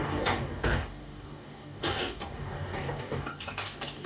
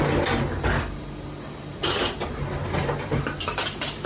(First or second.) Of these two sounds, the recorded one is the second